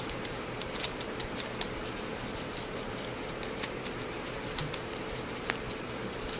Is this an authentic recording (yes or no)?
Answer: no